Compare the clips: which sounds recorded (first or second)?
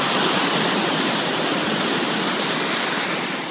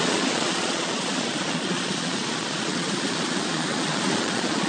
first